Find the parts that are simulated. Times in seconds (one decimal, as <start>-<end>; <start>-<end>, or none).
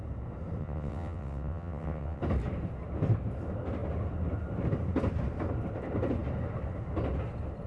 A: 0.6-2.2